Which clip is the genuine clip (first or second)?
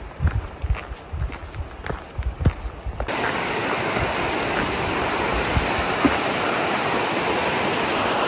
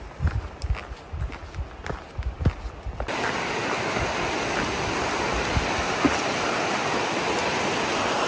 second